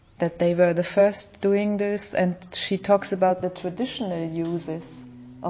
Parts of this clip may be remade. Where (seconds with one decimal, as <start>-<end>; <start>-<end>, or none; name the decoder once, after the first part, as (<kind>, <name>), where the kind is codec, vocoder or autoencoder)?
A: none